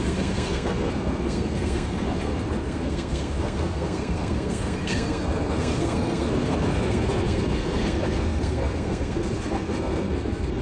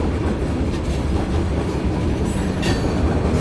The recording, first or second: second